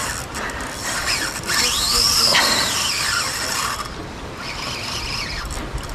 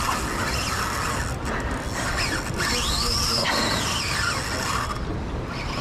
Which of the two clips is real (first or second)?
second